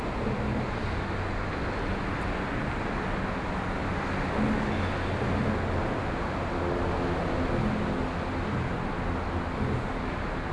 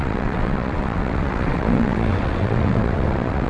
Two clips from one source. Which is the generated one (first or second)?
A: second